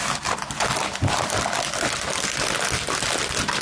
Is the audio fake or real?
real